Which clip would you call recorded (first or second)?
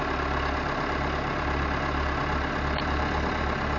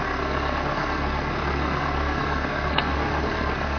first